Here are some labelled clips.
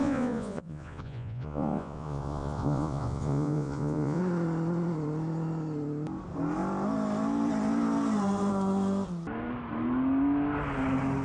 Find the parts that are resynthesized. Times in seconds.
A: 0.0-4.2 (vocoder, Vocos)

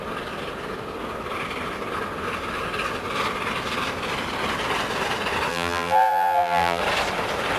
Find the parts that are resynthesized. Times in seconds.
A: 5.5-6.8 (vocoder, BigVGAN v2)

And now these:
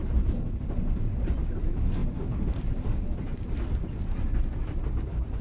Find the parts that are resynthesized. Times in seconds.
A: none

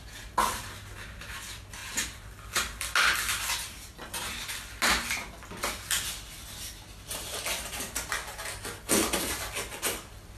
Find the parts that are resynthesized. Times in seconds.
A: none

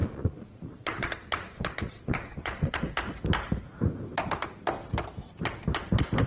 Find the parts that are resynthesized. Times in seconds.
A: 0.0-2.8 (vocoder, Vocos)

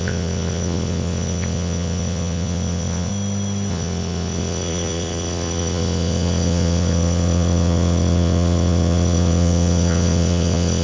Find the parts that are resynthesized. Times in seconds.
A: 0.0-3.1 (vocoder, Vocos); 3.7-10.8